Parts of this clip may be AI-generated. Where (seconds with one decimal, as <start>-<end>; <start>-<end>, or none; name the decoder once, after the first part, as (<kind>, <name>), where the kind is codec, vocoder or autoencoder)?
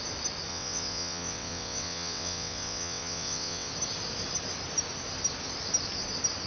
0.5-3.7 (vocoder, WaveNeXt)